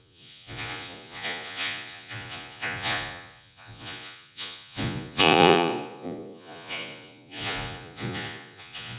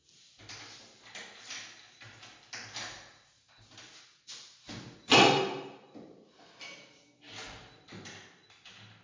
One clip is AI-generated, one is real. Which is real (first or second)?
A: second